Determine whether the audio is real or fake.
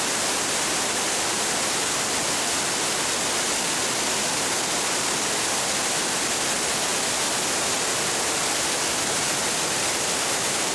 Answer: real